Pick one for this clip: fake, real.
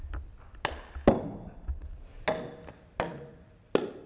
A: real